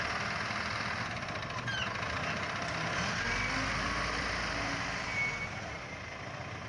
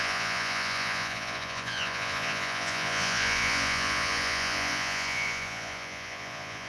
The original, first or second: first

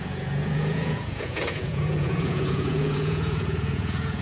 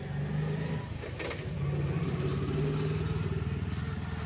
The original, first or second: second